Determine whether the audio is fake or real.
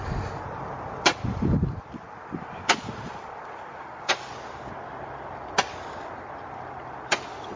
real